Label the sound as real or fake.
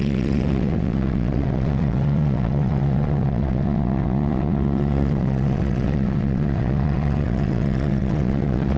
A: fake